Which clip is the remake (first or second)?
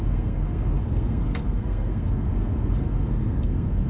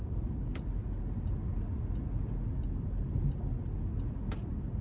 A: first